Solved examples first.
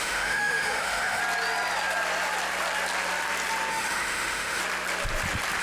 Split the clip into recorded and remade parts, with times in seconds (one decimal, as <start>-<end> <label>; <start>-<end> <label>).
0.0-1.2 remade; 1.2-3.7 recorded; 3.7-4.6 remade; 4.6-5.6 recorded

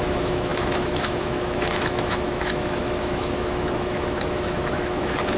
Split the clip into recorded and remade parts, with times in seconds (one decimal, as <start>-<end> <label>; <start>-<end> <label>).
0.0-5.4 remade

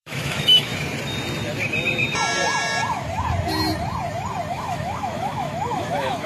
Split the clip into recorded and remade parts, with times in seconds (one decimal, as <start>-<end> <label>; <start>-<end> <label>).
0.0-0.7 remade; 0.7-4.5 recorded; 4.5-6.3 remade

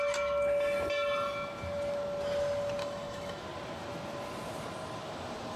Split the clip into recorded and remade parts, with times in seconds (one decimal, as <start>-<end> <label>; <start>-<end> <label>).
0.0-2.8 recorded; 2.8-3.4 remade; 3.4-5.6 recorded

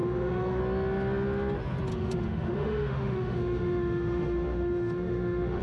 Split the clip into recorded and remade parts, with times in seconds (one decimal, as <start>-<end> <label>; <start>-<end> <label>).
0.0-0.6 remade; 0.6-1.9 recorded; 1.9-5.6 remade

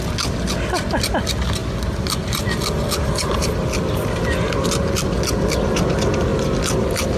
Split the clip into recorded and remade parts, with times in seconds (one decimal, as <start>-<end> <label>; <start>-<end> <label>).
0.0-7.2 recorded